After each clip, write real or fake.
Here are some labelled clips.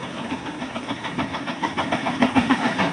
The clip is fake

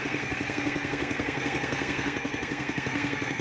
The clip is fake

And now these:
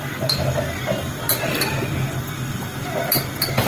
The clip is real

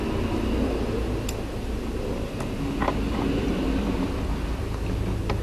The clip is real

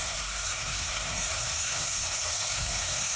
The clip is fake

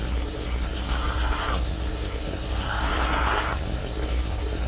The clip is fake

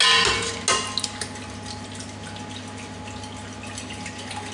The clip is real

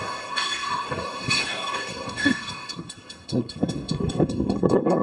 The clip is fake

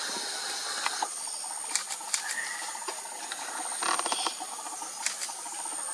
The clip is real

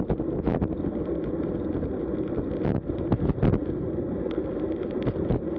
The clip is real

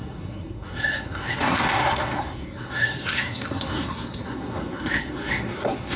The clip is fake